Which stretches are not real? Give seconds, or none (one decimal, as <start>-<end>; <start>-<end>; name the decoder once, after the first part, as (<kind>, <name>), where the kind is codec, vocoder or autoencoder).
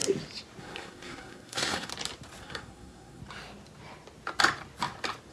0.6-1.9 (codec, SNAC); 2.4-3.2